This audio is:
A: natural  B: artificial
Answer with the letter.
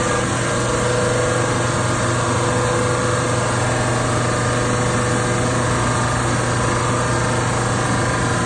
A